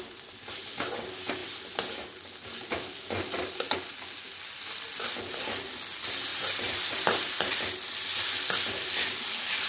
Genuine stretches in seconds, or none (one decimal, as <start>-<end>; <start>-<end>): 0.0-6.3; 7.5-9.7

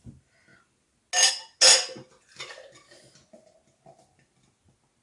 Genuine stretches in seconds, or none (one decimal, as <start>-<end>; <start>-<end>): 0.0-5.0

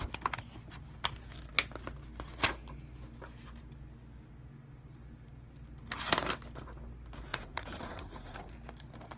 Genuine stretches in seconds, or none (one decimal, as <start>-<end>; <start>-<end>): 0.0-7.3; 8.5-9.2

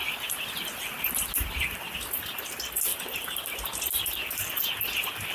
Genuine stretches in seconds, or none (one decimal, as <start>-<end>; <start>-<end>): 0.0-5.3

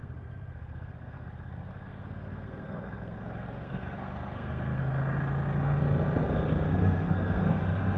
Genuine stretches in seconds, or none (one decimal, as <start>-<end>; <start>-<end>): 4.8-6.8; 7.6-8.0